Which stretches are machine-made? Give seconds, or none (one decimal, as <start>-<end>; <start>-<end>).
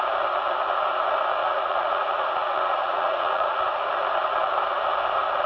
1.4-3.9